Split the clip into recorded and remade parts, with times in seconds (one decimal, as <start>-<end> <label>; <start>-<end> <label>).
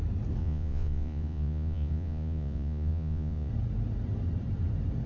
0.0-0.4 recorded; 0.4-3.5 remade; 3.5-5.1 recorded